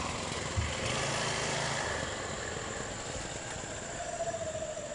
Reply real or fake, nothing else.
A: real